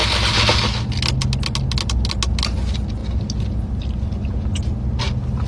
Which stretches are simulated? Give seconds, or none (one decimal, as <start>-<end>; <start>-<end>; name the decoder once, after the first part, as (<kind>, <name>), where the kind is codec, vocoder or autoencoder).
none